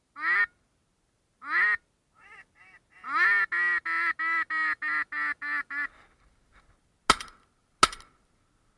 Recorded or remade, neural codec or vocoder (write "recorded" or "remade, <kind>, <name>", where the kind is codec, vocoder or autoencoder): recorded